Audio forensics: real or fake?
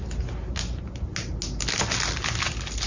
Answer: real